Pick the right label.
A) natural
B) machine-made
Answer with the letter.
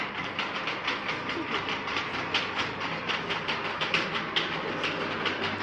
A